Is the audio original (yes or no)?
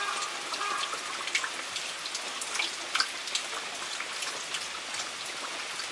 yes